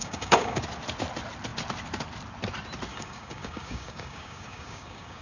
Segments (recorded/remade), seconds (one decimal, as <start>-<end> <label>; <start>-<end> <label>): 0.0-0.6 remade; 0.6-2.9 recorded; 2.9-5.2 remade